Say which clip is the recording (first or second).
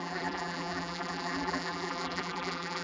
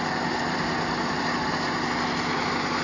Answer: second